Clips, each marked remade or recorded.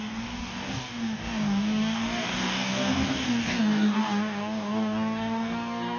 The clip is remade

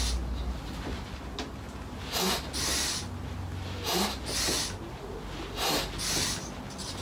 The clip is recorded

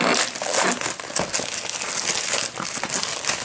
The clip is recorded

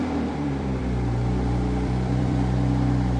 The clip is remade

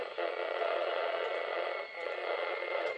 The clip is remade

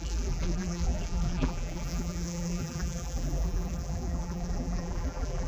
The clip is remade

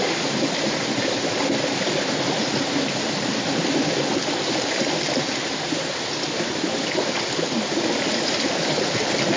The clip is recorded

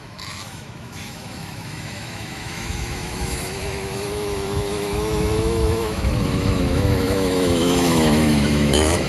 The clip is remade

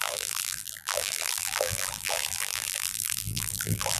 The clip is remade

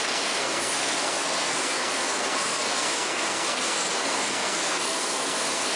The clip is remade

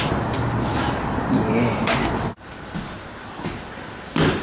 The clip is recorded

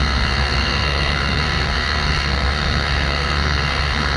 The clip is remade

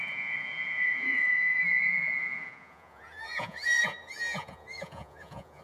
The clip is remade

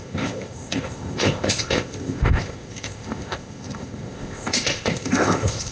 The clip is remade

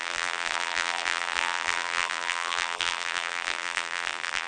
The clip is remade